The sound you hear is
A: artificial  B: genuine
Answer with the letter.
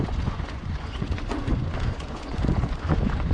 A